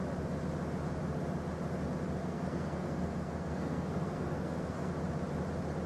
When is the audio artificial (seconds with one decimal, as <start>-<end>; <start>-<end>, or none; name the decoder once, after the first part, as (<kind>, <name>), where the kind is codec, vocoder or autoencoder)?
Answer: 2.2-4.9 (codec, SNAC)